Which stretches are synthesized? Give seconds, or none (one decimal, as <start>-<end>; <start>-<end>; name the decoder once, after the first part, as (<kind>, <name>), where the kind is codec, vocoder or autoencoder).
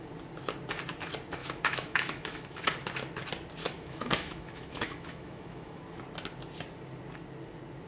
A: 1.4-2.6 (autoencoder, DAC-VAE); 3.6-5.8